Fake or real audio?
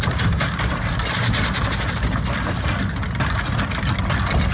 real